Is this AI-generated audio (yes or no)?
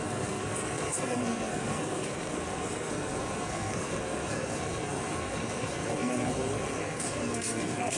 yes